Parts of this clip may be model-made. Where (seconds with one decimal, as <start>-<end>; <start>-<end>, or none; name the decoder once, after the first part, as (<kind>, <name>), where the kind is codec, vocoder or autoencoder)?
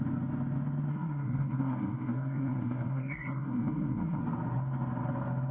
0.9-4.2 (codec, SNAC)